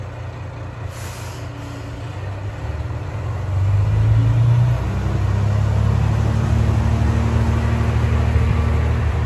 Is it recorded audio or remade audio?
recorded